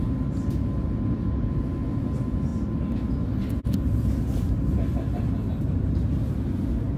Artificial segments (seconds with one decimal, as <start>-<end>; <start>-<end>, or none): none